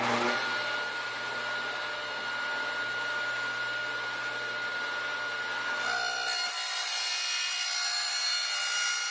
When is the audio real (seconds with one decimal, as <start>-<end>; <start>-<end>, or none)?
0.0-9.1